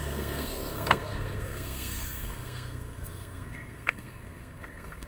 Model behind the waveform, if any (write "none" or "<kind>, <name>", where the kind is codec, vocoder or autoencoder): codec, SNAC